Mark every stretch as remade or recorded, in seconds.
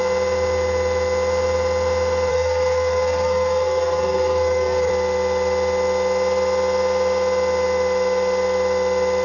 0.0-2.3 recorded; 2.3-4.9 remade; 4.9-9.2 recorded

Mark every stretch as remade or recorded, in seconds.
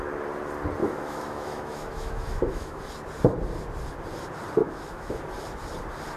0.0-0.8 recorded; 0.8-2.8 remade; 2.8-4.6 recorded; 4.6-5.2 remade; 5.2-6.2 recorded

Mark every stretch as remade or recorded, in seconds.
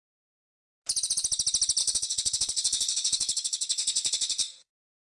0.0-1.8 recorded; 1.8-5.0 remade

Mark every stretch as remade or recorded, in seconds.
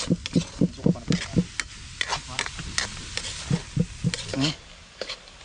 0.0-4.3 recorded; 4.3-5.4 remade